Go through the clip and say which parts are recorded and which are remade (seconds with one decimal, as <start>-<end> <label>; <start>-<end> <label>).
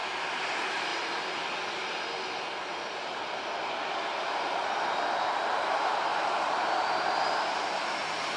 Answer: 0.0-0.5 recorded; 0.5-0.9 remade; 0.9-4.1 recorded; 4.1-8.4 remade